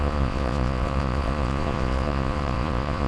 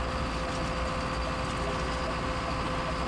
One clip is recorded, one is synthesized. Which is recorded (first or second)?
second